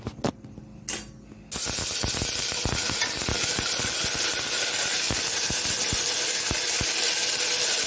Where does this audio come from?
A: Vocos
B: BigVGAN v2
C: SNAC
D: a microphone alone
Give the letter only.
D